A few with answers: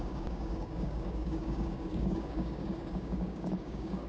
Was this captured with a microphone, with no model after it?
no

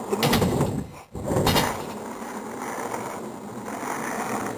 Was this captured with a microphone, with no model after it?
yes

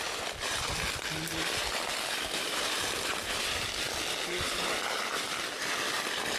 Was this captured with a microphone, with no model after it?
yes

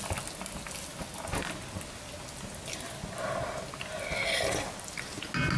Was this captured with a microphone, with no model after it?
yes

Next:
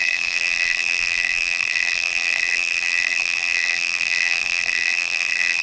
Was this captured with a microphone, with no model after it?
no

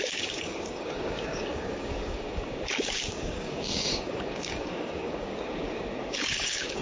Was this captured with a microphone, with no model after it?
no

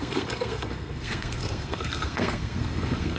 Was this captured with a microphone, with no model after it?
no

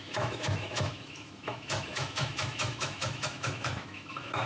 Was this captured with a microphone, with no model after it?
no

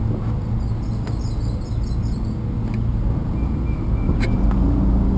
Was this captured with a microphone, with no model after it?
yes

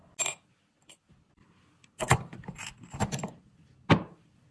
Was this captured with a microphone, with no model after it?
yes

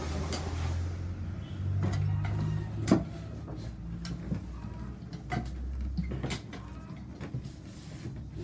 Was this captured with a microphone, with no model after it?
yes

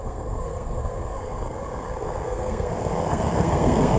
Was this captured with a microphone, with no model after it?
no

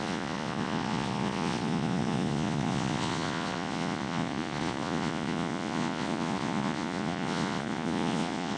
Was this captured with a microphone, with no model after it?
no